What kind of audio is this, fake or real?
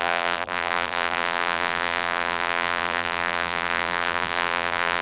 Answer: fake